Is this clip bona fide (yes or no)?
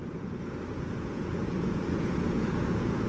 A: no